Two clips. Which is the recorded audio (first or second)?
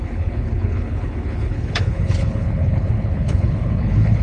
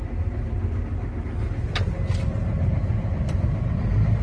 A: second